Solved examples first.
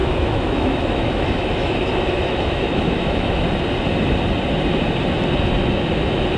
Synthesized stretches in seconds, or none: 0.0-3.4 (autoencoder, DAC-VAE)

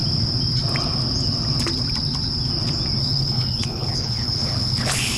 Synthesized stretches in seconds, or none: 3.0-5.2 (codec, HILCodec)

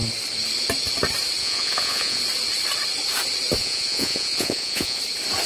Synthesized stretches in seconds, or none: 1.4-2.2 (vocoder, Vocos); 3.6-5.0

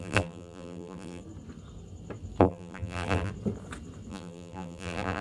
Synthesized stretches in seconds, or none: 0.0-1.2 (vocoder, BigVGAN v2); 2.4-3.3; 4.1-5.2

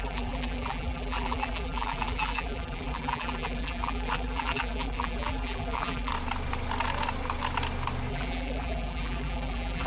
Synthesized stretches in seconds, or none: 0.0-6.1 (vocoder, BigVGAN v2); 8.1-9.9

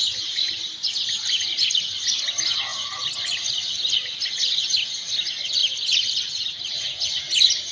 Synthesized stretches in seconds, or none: none

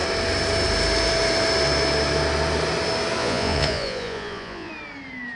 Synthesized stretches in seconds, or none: 3.2-4.7 (vocoder, Vocos)

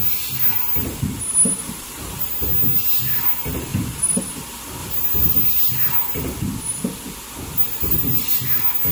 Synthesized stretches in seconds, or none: 1.6-2.3 (vocoder, BigVGAN v2); 3.7-4.2; 4.8-5.4; 7.6-8.4